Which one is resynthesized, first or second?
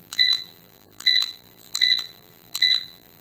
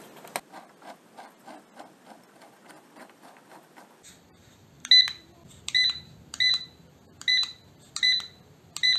first